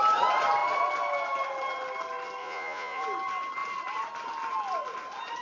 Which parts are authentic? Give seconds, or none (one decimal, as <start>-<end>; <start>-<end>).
0.0-2.4; 3.0-5.4